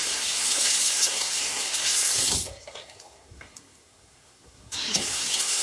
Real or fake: fake